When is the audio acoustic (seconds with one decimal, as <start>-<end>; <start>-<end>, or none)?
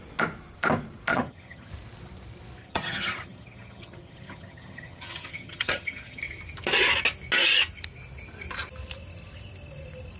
0.0-1.1; 1.7-2.6; 6.2-10.2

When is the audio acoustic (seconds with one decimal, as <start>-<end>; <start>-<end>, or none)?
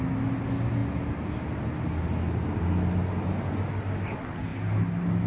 0.0-5.3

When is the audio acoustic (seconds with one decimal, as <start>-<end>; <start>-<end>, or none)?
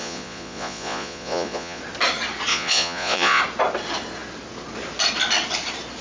1.8-2.5; 3.4-6.0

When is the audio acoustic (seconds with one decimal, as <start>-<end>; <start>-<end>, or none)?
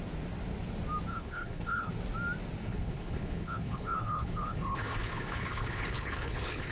0.0-1.1; 1.9-2.6